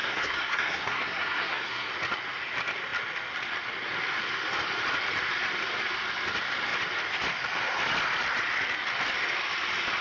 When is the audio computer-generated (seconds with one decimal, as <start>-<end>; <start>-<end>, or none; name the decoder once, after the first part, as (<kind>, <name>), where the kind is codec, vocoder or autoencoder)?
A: 0.0-1.9 (codec, SNAC)